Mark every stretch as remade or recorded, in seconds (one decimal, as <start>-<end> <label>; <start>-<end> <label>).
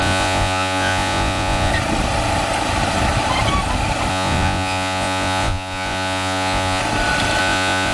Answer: 0.0-1.7 remade; 1.7-4.1 recorded; 4.1-6.8 remade; 6.8-7.4 recorded; 7.4-7.9 remade